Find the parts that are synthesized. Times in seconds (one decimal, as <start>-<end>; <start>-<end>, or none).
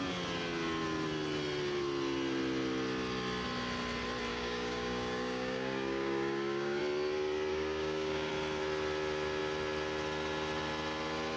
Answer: 4.3-6.8; 7.5-8.3